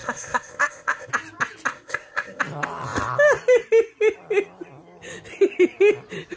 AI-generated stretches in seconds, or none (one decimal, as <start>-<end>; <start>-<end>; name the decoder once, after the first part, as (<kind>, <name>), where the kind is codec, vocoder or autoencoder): 0.0-1.1 (codec, ZipCodec); 1.7-2.4